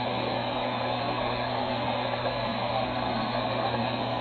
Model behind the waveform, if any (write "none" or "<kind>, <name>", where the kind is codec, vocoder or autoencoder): codec, SNAC